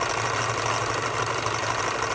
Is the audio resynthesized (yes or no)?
no